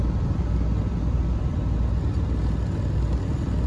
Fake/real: real